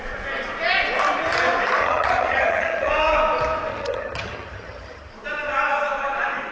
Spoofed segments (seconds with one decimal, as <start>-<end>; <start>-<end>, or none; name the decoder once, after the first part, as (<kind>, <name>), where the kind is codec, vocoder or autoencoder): 1.8-2.9 (vocoder, HiFi-GAN); 3.7-5.1